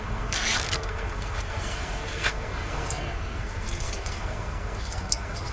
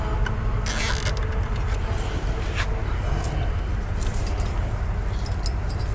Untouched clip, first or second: second